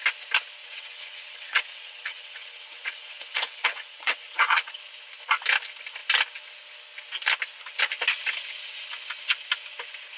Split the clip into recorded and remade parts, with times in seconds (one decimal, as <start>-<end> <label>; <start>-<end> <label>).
0.0-0.6 recorded; 0.6-4.7 remade; 4.7-10.2 recorded